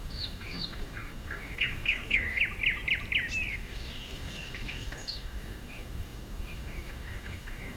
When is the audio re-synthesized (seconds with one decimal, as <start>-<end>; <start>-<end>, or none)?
0.0-2.4; 3.5-7.8